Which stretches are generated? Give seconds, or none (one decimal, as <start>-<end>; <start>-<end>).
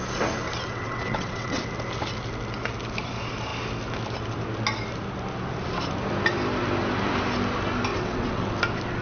0.7-1.6; 7.9-8.5